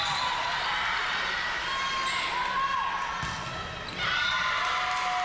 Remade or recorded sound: recorded